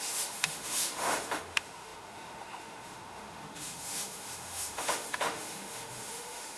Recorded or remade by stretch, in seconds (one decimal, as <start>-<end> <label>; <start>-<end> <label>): 0.0-6.6 remade